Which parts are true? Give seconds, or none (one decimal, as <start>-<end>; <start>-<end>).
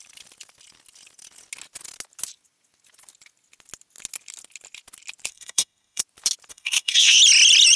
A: 0.0-5.3; 6.0-6.5; 7.2-7.8